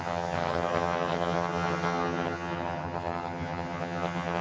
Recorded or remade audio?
remade